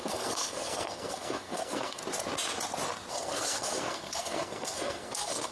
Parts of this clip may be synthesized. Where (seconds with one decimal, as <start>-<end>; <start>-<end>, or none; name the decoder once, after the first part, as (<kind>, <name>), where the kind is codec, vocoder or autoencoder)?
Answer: 0.0-2.0 (codec, SNAC); 3.1-5.5